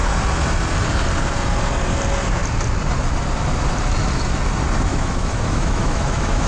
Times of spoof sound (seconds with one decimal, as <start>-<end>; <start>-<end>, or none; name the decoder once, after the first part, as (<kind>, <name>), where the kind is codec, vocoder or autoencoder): 4.9-6.5 (autoencoder, DAC-VAE)